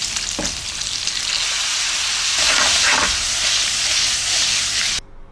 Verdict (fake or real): real